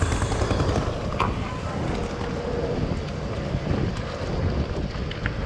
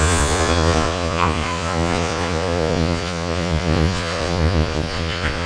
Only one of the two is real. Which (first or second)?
first